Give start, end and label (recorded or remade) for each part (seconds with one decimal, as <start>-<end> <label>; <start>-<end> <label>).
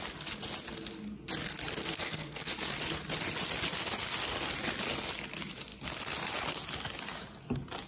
0.0-1.8 recorded; 1.8-2.5 remade; 2.5-7.9 recorded